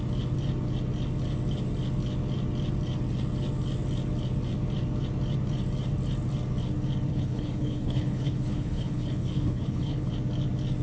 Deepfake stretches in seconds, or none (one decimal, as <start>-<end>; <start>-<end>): 7.1-10.1